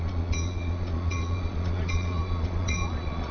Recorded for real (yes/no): no